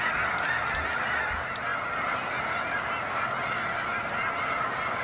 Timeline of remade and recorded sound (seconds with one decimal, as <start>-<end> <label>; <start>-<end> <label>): 0.0-5.0 recorded